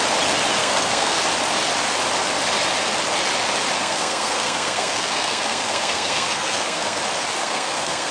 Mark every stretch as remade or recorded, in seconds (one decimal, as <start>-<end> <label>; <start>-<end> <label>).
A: 0.0-0.6 recorded; 0.6-1.2 remade; 1.2-3.8 recorded; 3.8-7.0 remade; 7.0-7.4 recorded; 7.4-8.1 remade